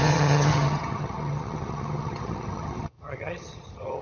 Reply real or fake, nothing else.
fake